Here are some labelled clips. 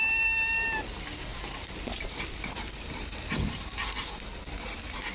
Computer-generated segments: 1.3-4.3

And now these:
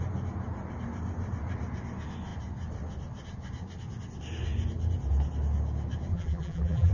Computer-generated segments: 6.1-6.9

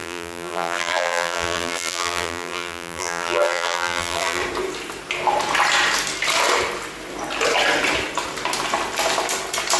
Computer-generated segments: 0.0-4.4

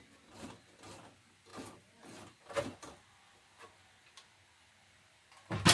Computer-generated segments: none

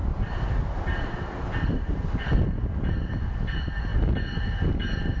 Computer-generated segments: none